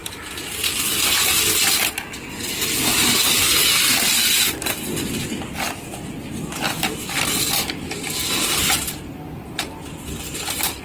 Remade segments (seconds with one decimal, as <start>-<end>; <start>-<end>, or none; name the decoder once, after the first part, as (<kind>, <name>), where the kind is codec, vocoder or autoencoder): none